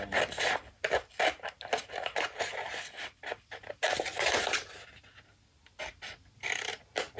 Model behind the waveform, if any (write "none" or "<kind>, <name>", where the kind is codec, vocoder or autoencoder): none